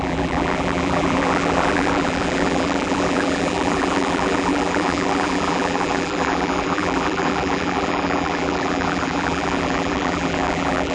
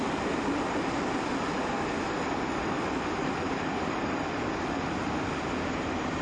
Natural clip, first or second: second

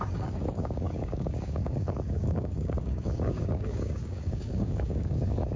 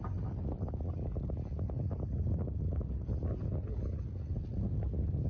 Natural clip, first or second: second